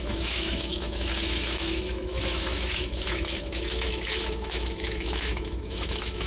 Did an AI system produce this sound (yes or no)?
yes